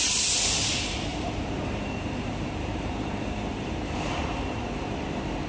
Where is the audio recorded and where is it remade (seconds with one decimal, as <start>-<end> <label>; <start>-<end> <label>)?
0.0-1.1 recorded; 1.1-4.1 remade; 4.1-5.5 recorded